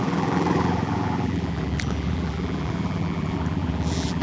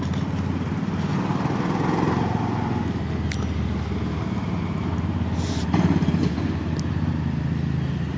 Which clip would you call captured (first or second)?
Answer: second